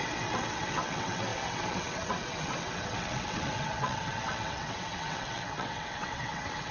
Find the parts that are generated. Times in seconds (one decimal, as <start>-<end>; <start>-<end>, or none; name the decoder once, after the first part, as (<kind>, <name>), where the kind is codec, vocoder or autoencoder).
0.0-6.7 (vocoder, WaveNeXt)